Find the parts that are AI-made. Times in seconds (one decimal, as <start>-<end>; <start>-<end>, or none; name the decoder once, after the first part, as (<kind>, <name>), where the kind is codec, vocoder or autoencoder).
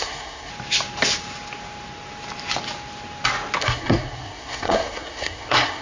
0.0-0.5 (codec, SNAC); 3.6-5.8